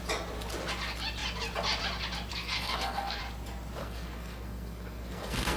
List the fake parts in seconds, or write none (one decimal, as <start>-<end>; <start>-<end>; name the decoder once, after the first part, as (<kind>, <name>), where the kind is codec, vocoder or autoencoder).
2.3-3.2 (codec, SNAC); 3.8-5.6